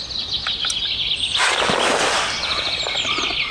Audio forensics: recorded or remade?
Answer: recorded